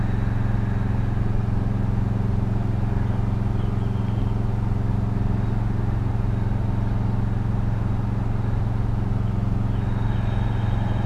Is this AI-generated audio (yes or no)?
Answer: no